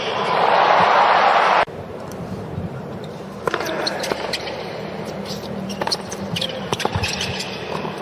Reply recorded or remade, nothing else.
remade